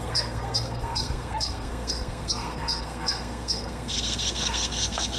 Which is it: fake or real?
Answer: fake